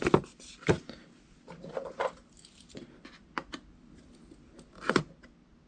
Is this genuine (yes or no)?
yes